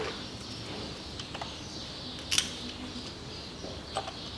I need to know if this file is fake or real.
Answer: real